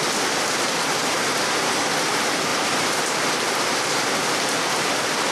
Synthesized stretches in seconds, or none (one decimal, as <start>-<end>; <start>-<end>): 1.0-1.8; 2.5-3.4

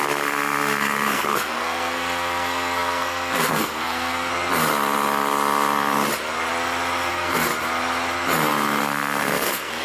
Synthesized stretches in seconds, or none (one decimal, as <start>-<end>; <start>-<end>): 0.0-4.3; 7.1-7.5; 8.8-9.8

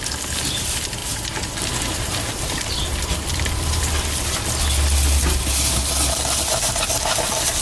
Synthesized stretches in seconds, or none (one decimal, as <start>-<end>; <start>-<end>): 1.0-3.9

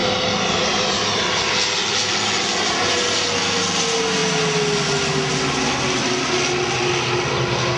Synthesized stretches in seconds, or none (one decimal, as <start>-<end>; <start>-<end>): none